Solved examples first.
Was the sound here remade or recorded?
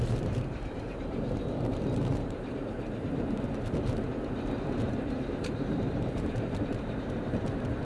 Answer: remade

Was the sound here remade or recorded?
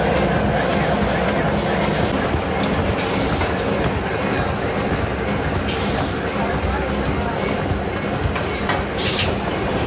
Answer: recorded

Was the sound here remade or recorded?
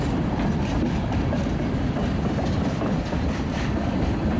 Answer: remade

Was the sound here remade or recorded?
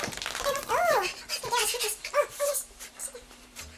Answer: remade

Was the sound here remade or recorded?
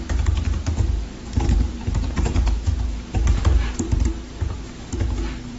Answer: remade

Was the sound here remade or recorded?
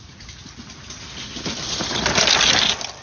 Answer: remade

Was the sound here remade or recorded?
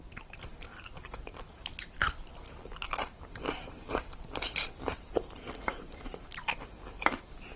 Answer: remade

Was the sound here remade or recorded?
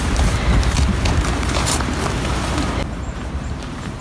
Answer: remade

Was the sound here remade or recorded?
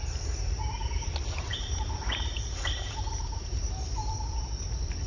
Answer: remade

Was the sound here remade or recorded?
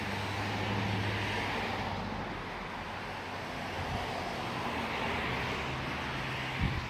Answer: recorded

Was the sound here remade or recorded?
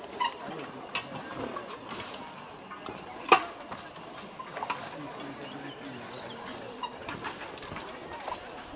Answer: recorded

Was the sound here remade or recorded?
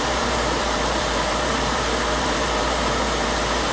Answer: remade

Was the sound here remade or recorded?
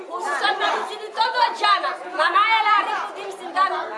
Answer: recorded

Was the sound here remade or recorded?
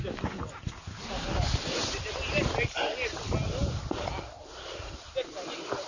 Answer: recorded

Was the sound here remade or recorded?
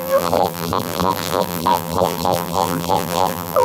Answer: remade